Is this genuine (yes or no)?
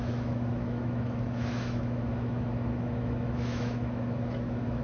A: no